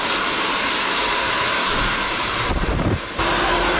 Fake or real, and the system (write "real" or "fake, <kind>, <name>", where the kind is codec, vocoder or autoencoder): fake, vocoder, BigVGAN v2